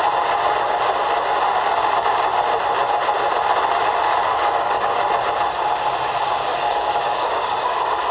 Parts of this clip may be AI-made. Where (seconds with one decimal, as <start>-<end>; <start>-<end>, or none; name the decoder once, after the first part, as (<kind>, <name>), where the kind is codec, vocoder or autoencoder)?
4.3-5.0 (codec, DAC); 6.5-8.1